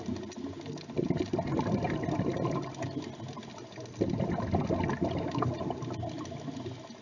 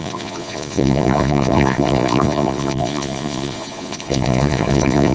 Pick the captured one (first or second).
first